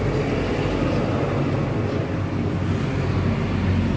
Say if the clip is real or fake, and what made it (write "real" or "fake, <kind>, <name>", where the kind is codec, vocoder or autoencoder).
real